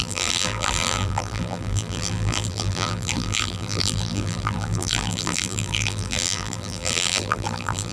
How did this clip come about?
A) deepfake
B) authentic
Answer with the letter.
A